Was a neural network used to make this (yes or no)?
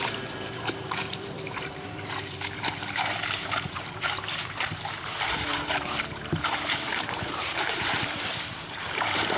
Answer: yes